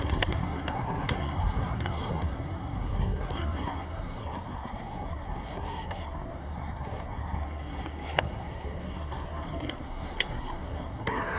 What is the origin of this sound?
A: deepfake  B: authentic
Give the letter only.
A